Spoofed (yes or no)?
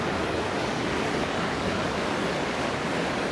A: yes